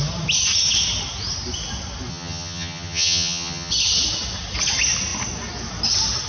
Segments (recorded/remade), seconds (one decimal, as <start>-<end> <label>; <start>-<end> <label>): 0.0-2.1 recorded; 2.1-3.7 remade; 3.7-6.3 recorded